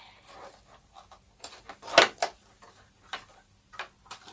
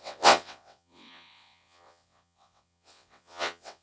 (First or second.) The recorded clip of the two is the first